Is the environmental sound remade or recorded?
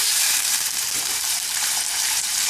remade